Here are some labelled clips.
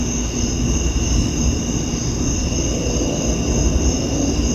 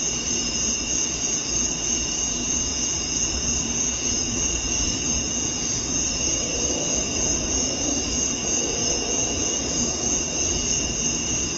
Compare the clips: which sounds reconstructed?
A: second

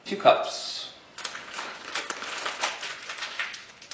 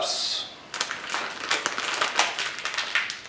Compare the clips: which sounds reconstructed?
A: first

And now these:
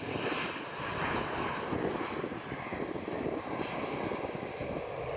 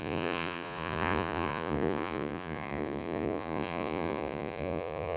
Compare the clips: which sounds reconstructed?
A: second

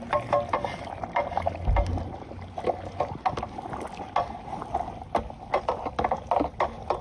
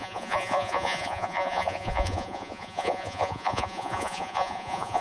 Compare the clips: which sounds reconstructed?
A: second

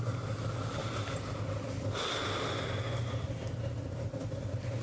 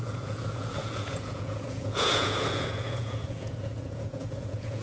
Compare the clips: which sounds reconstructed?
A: second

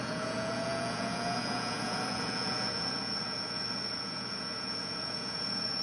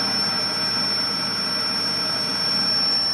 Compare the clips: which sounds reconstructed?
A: first